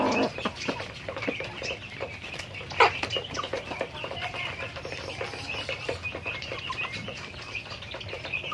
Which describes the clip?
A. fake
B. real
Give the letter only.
B